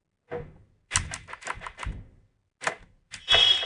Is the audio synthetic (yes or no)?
no